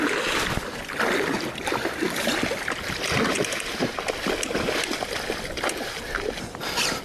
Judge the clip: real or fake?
real